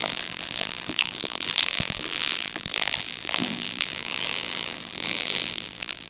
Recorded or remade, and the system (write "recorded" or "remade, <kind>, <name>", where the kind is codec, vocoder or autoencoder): remade, vocoder, BigVGAN v2